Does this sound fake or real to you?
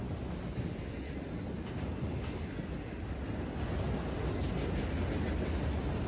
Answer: real